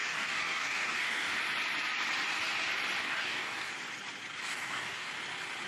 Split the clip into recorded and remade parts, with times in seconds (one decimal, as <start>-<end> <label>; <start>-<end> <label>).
0.0-1.4 remade; 1.4-3.0 recorded; 3.0-3.7 remade; 3.7-4.4 recorded; 4.4-5.1 remade; 5.1-5.7 recorded